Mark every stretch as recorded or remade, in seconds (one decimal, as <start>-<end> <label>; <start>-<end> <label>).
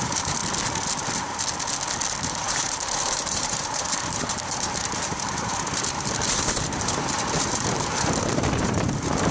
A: 0.0-0.4 remade; 0.4-2.2 recorded; 2.2-9.3 remade